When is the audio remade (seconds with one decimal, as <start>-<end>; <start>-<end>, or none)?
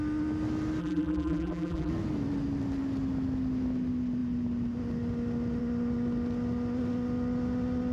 0.8-1.9